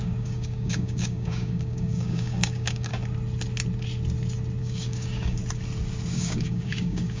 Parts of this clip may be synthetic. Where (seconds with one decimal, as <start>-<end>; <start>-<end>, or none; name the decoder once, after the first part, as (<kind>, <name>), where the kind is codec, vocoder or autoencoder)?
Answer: 0.0-2.9 (codec, DAC); 4.6-5.4; 6.1-7.2